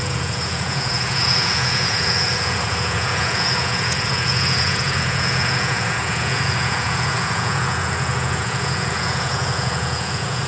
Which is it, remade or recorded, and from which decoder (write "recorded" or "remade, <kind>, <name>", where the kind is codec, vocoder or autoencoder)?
remade, vocoder, Vocos